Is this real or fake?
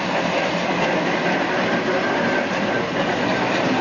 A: real